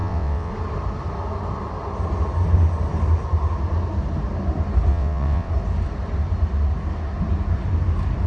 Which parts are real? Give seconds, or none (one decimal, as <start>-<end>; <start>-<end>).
0.5-4.9; 5.5-8.3